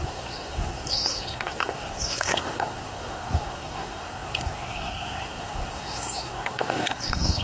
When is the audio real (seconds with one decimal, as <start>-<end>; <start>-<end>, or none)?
none